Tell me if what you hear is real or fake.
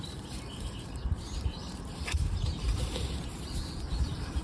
fake